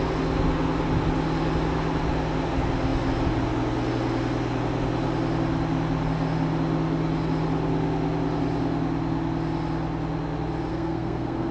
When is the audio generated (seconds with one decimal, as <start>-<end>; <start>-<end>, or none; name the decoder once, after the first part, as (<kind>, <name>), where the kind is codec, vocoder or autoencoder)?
10.7-11.5 (codec, SNAC)